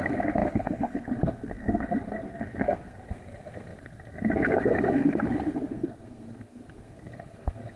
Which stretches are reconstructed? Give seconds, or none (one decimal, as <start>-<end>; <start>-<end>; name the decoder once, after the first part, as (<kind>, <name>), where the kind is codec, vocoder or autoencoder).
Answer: 0.0-7.8 (codec, SNAC)